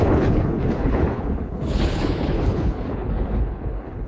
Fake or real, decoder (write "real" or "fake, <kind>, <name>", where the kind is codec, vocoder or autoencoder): fake, codec, HILCodec